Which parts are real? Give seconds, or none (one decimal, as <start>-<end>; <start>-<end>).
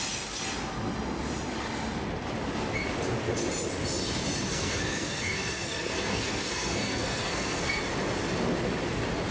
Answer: 0.0-4.5; 7.8-9.3